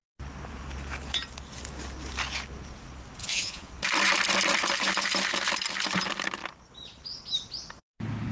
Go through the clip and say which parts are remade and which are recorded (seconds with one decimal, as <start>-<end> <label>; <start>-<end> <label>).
0.0-3.2 recorded; 3.2-3.7 remade; 3.7-8.3 recorded